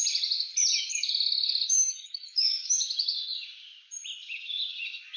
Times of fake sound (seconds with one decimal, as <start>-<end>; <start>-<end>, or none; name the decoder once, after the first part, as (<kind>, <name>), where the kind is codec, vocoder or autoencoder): 0.9-3.4 (autoencoder, DAC-VAE)